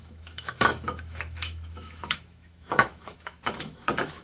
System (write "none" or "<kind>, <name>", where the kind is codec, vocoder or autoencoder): autoencoder, DAC-VAE